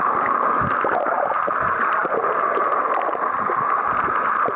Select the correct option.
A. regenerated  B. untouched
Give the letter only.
A